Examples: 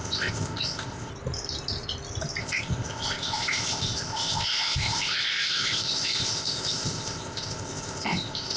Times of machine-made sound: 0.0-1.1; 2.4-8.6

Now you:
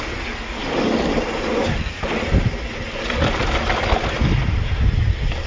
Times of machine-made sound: none

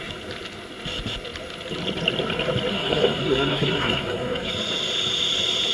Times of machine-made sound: 2.7-4.5

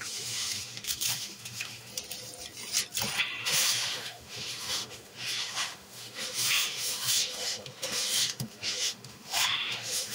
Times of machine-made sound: 0.0-1.9; 3.4-10.1

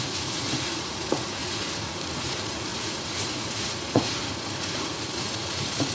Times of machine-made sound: 0.0-5.9

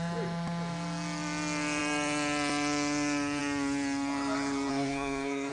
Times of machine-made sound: 4.7-5.5

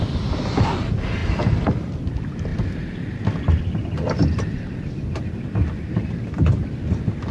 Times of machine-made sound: none

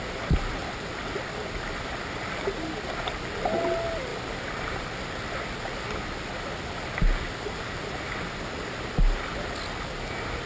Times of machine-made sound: 0.6-3.2; 4.1-4.9